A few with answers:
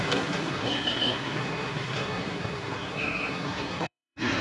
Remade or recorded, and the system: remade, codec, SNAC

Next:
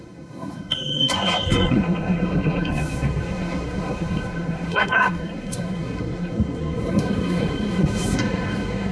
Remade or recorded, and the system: remade, codec, SNAC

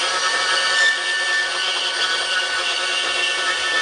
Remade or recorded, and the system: recorded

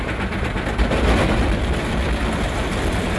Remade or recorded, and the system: recorded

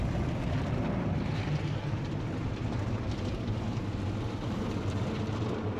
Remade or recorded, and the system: recorded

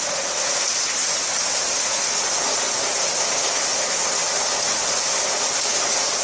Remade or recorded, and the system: recorded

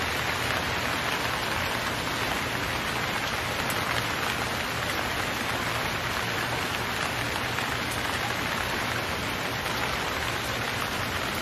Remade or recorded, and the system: recorded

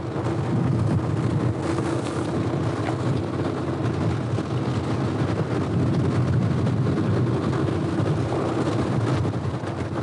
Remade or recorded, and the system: recorded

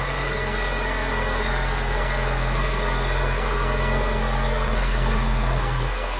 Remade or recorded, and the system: remade, codec, SNAC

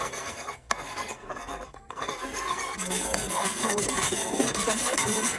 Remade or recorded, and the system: remade, codec, SNAC